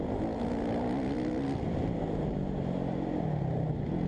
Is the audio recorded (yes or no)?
yes